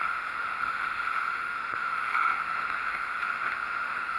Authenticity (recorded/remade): remade